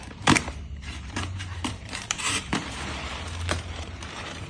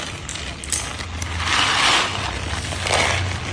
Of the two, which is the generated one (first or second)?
first